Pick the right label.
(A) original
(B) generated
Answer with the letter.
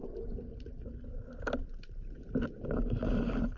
A